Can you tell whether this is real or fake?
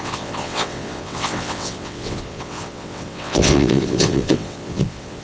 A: fake